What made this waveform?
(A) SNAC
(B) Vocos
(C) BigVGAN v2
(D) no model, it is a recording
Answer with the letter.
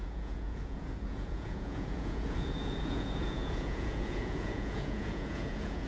B